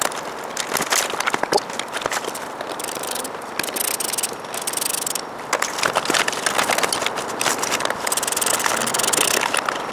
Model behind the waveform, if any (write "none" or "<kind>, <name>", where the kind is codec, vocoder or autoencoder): none